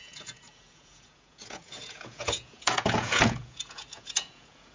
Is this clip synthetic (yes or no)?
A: yes